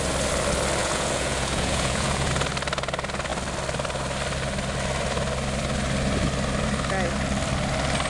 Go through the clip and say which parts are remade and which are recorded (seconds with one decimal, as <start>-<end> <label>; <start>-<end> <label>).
0.0-0.8 recorded; 0.8-2.3 remade; 2.3-8.1 recorded